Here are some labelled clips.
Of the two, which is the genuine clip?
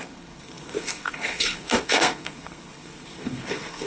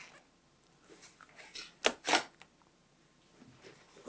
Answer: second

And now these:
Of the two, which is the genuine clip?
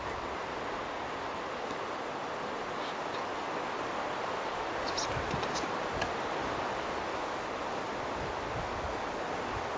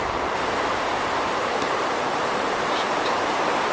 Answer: first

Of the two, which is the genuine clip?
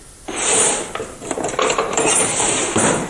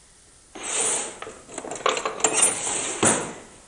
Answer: second